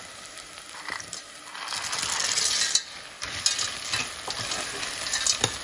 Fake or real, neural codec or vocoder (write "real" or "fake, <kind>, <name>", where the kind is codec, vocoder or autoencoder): real